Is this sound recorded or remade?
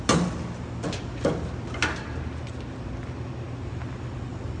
recorded